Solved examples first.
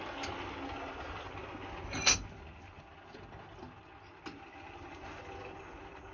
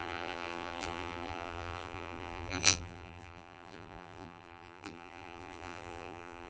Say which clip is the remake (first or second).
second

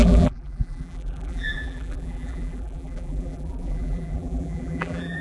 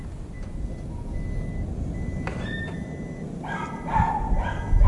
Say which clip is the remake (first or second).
first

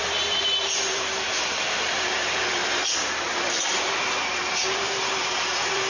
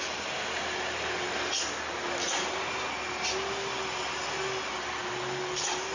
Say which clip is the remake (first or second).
first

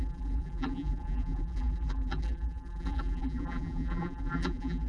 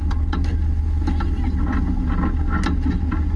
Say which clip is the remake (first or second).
first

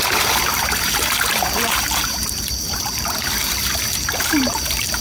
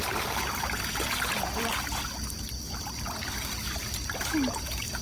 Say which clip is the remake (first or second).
first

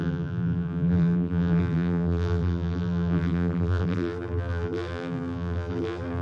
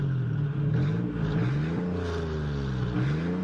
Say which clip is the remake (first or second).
first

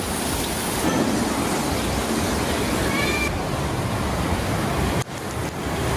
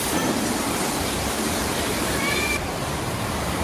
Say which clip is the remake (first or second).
second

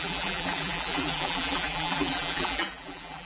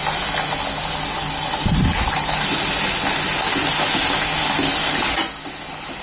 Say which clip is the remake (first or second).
first